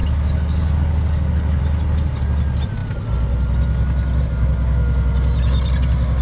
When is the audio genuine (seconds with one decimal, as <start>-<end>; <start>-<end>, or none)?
1.6-6.2